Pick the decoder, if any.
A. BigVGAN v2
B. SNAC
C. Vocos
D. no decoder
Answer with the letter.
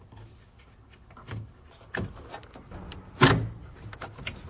D